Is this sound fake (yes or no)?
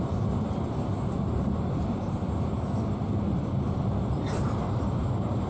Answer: no